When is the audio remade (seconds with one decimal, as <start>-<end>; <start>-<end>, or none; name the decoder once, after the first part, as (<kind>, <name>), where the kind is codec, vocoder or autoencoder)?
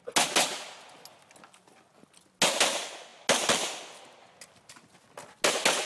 none